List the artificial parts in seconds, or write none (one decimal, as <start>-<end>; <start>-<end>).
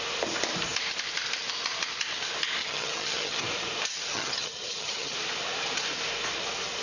2.6-3.4; 4.1-5.1